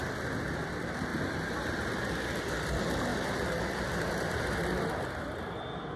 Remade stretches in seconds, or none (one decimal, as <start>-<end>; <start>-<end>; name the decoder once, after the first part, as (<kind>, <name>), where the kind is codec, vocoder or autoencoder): none